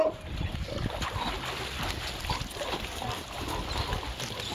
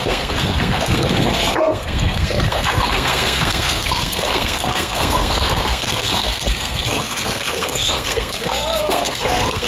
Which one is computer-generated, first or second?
second